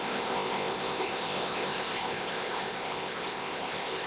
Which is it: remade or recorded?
remade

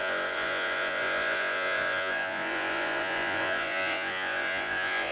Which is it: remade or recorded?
remade